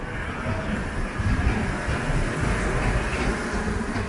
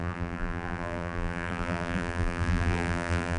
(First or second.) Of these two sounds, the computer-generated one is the second